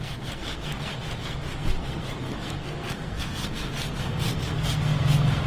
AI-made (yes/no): yes